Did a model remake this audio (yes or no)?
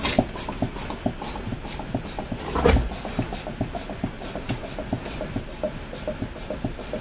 no